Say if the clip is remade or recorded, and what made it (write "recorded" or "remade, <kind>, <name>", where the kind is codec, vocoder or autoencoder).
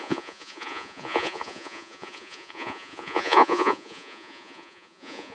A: remade, vocoder, Vocos